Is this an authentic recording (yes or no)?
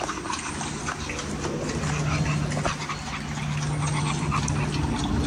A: yes